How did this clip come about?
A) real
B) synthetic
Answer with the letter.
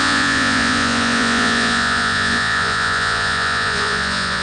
B